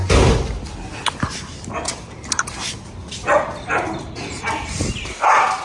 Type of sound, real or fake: real